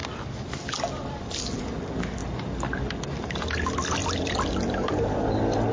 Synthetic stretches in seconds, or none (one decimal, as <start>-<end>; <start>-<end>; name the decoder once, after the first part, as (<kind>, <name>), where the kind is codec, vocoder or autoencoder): 0.0-1.6 (vocoder, BigVGAN v2); 4.0-4.9